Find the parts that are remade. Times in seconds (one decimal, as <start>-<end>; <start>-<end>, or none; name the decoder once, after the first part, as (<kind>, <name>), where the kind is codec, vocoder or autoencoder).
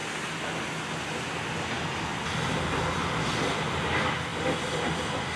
none